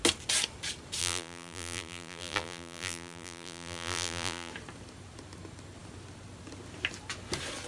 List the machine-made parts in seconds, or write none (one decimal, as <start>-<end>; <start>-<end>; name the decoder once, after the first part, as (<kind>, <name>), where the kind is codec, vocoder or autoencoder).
1.0-4.5 (vocoder, BigVGAN v2)